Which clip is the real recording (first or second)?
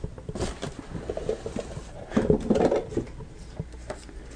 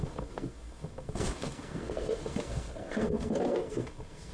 first